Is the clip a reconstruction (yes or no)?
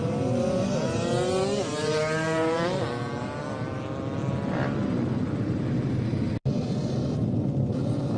no